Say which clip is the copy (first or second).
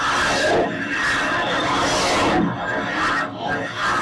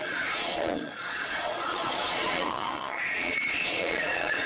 second